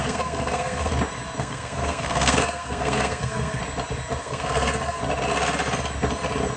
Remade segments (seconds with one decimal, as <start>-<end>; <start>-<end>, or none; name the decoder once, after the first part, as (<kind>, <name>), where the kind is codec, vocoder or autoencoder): 0.0-0.9 (codec, SNAC); 1.4-3.6; 4.2-5.0

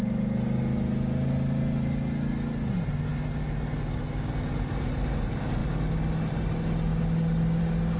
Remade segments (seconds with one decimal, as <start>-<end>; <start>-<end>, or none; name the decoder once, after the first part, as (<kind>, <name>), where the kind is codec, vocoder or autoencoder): none

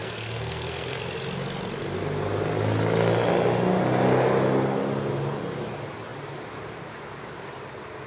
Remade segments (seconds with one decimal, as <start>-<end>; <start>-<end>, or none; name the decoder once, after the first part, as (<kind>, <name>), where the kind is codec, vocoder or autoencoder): 0.0-1.0 (codec, SNAC)

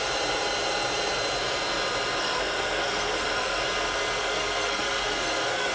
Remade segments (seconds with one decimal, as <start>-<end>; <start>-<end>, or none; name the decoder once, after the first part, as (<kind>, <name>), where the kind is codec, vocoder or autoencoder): 2.2-3.6 (codec, SNAC); 4.2-5.7